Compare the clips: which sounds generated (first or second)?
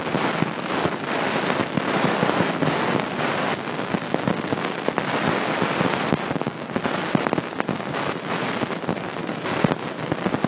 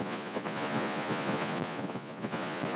second